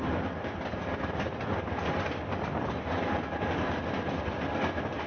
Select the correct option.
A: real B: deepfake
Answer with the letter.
A